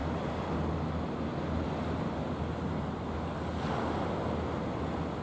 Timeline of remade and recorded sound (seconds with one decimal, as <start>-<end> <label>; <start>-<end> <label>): 0.0-5.2 recorded